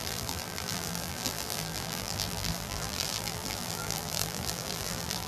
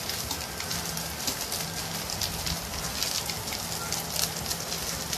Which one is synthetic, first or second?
first